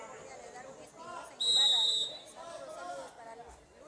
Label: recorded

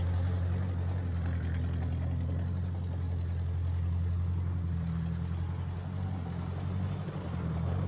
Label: recorded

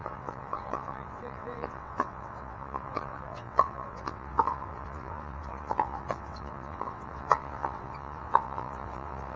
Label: remade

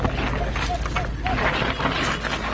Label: recorded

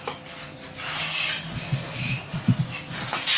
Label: recorded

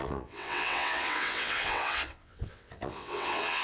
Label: remade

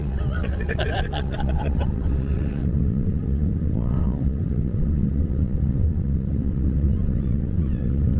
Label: remade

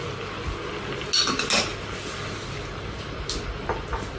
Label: recorded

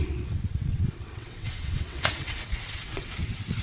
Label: remade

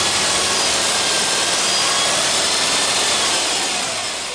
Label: recorded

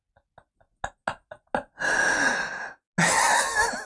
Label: recorded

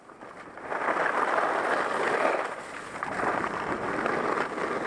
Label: recorded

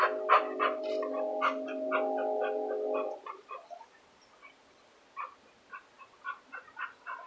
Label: recorded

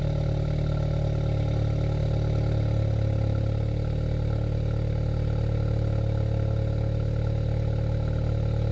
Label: recorded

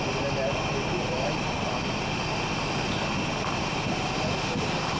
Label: recorded